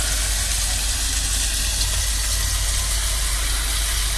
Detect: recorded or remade recorded